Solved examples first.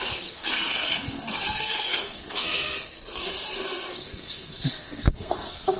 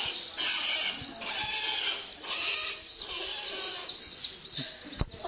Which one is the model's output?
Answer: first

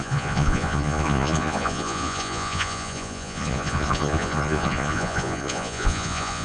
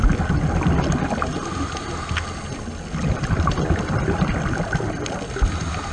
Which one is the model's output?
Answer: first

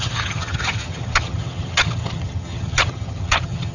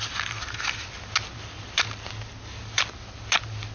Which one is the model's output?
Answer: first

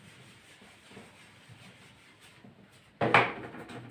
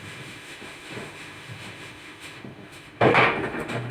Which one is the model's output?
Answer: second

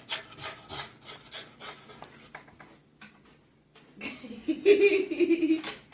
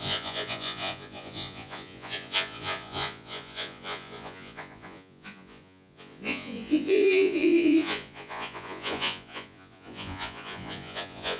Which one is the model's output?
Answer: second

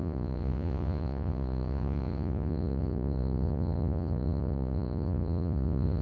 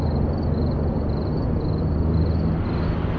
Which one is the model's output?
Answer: first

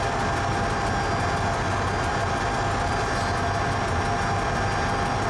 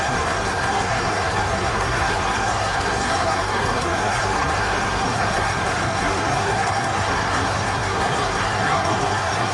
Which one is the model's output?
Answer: second